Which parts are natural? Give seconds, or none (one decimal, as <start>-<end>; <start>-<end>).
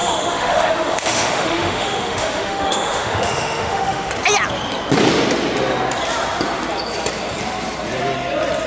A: 4.1-8.7